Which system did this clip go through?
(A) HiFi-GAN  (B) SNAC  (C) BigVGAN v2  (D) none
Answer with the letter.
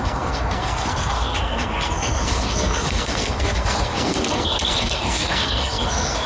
B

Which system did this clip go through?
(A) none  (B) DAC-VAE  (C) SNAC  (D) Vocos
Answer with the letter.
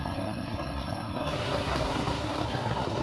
C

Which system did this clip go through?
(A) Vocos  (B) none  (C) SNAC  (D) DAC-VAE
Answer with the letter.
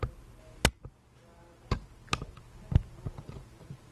B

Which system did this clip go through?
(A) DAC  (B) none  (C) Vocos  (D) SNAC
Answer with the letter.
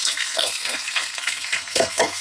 D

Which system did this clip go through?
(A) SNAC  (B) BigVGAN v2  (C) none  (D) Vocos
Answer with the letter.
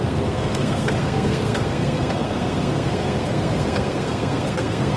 A